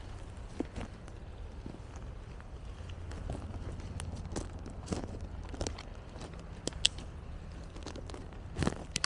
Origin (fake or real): real